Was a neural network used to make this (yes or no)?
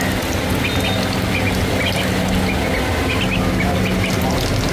no